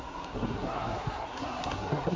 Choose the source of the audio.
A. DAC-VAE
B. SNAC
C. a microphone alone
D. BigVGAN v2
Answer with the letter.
B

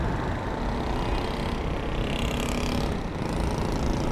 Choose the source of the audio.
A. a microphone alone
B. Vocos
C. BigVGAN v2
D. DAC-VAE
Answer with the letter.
A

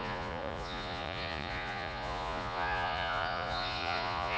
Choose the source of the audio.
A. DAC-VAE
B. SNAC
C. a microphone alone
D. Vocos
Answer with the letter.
D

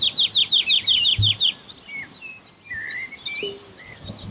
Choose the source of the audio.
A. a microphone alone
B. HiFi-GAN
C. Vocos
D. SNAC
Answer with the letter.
A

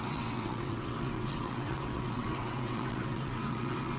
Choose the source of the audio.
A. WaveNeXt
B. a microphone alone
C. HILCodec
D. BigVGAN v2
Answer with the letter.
A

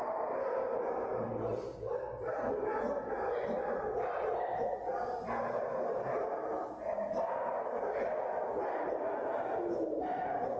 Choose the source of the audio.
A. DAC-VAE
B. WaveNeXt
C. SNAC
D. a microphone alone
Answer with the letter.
D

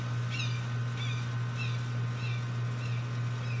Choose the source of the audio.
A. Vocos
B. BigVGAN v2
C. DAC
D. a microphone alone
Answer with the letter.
D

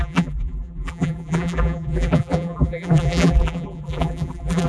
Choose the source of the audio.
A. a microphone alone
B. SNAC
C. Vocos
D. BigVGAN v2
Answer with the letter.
D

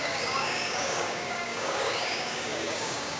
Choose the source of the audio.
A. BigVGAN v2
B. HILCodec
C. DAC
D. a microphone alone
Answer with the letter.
C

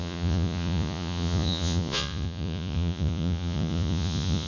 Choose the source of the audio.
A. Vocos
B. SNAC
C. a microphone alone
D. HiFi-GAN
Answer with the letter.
A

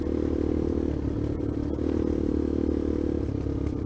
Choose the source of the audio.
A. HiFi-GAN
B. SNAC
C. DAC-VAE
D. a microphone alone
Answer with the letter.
D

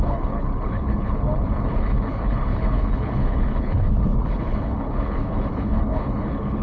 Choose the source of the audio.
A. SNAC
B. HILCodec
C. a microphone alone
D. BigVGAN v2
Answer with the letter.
B